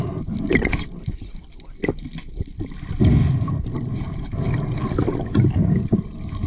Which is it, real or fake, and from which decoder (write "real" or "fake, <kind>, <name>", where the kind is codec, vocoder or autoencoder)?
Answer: real